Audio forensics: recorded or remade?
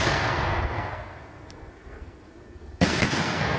remade